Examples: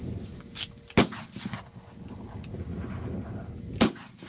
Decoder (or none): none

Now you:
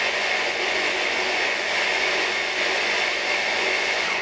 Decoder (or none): vocoder, Vocos